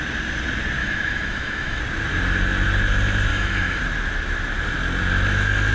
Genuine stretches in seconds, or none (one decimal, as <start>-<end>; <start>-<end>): 0.0-0.8; 1.8-3.3; 3.8-5.7